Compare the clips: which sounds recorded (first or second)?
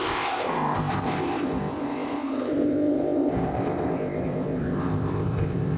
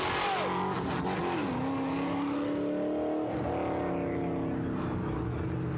second